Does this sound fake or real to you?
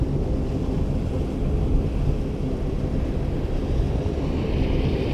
real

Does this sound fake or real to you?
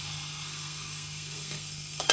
fake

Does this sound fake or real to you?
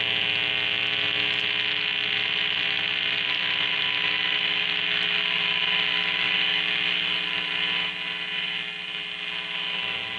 real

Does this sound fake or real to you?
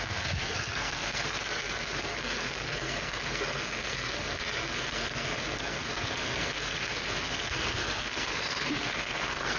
fake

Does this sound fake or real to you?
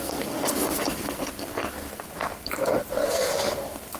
fake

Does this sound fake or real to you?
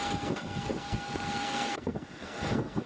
fake